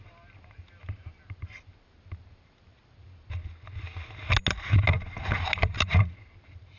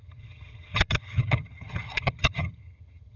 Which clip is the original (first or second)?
first